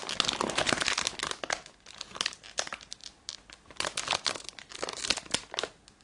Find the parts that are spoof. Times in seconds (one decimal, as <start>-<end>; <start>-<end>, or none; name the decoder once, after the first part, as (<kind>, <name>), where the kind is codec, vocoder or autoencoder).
none